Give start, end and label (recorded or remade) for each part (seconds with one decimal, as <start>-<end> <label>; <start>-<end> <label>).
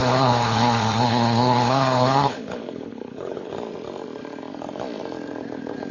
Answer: 0.0-3.5 remade; 3.5-5.9 recorded